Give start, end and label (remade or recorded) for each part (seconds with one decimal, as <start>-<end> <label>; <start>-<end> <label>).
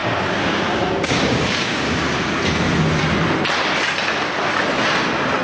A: 0.0-2.3 remade; 2.3-5.4 recorded